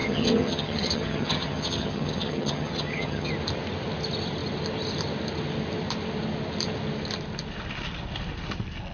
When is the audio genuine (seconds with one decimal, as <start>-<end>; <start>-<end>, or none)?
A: 3.3-8.9